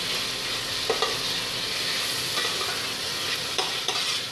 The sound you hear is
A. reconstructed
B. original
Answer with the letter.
B